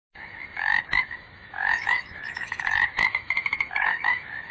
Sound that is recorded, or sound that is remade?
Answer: remade